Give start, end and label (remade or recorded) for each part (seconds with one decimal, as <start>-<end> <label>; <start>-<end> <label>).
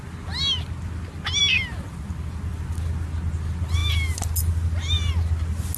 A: 0.0-5.8 recorded